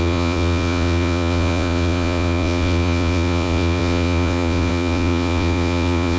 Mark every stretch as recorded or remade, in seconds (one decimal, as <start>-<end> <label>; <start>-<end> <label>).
0.0-6.2 remade